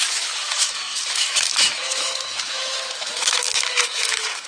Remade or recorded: remade